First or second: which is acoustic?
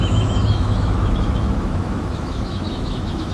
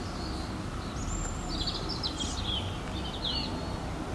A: second